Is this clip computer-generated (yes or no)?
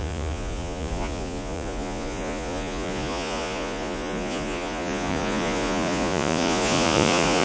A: yes